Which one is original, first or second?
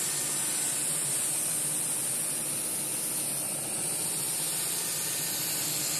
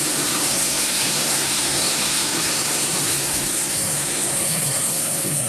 first